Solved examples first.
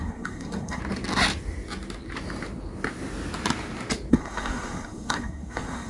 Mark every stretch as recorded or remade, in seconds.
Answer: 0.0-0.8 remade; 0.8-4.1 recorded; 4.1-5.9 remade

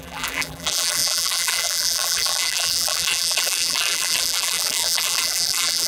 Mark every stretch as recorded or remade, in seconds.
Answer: 0.0-5.9 remade

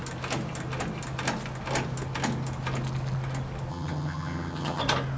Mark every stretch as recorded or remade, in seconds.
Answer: 0.0-3.7 recorded; 3.7-4.8 remade; 4.8-5.2 recorded

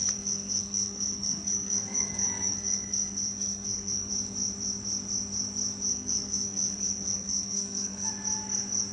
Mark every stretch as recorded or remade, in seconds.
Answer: 0.0-4.1 remade; 4.1-5.9 recorded; 5.9-8.1 remade; 8.1-8.9 recorded

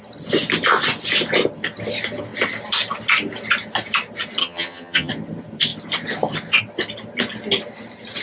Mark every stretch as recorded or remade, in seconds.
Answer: 0.0-4.4 recorded; 4.4-5.1 remade; 5.1-8.2 recorded

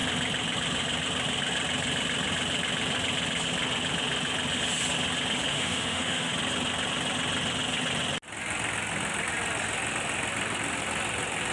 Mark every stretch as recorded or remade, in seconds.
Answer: 0.0-5.5 recorded; 5.5-6.3 remade; 6.3-11.5 recorded

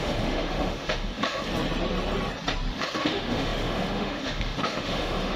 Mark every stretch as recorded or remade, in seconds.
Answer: 0.0-1.5 remade; 1.5-2.7 recorded; 2.7-5.4 remade

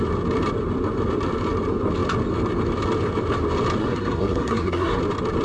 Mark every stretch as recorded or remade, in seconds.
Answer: 0.0-3.8 recorded; 3.8-5.0 remade; 5.0-5.4 recorded